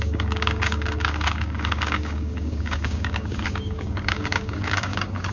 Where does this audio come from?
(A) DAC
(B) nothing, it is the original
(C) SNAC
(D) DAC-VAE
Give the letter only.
A